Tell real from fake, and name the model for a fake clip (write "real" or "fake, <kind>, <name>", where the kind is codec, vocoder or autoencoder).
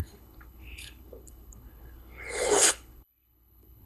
fake, codec, HILCodec